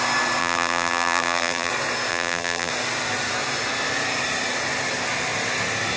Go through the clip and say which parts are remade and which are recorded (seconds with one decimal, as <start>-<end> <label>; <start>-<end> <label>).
0.0-0.4 recorded; 0.4-1.7 remade; 1.7-2.1 recorded; 2.1-2.7 remade; 2.7-6.0 recorded